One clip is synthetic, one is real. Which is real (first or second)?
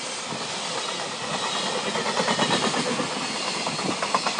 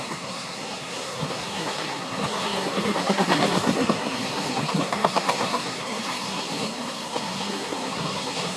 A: first